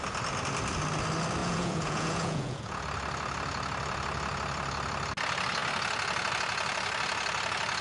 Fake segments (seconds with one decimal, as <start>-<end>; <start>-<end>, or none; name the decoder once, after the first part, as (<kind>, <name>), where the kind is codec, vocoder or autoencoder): 1.4-2.8 (vocoder, Vocos)